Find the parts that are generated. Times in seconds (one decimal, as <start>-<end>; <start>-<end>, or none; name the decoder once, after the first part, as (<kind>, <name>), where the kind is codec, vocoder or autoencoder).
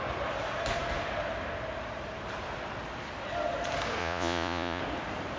4.0-4.8 (vocoder, Vocos)